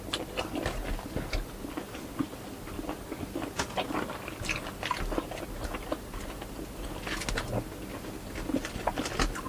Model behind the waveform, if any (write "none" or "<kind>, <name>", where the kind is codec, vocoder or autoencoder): none